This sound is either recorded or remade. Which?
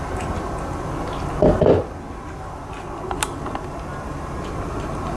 recorded